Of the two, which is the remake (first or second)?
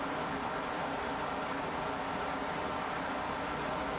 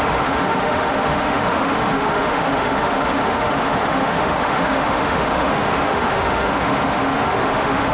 second